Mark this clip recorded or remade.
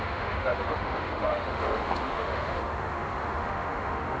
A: remade